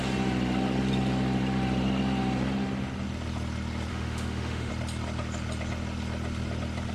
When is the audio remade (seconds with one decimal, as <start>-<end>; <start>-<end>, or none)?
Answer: 3.9-4.7

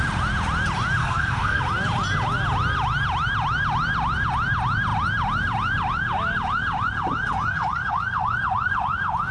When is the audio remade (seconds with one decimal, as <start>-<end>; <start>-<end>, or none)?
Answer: 1.0-1.6

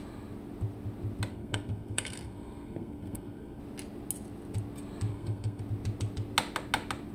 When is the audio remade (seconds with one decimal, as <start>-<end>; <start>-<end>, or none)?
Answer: 1.3-3.6; 5.1-5.6

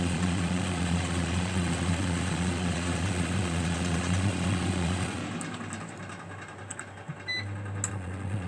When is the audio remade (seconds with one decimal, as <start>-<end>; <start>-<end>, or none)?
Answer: 0.0-5.2; 7.9-8.5

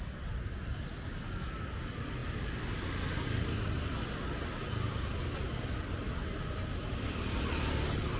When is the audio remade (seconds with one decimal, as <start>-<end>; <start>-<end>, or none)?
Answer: none

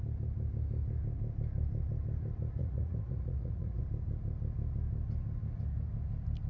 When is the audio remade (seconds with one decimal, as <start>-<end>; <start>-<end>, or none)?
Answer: 2.6-3.8